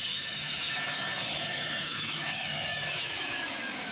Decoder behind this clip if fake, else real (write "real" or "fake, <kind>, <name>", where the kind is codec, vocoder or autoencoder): fake, autoencoder, DAC-VAE